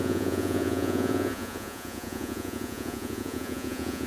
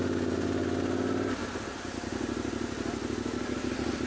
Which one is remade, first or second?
first